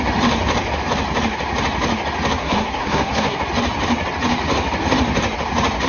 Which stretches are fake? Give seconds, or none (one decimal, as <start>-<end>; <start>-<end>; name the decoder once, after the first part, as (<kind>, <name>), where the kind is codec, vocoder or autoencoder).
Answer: 2.4-3.4 (codec, SNAC)